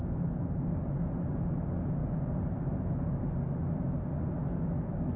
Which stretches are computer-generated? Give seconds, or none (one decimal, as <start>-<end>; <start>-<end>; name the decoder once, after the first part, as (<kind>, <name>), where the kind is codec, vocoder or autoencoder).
none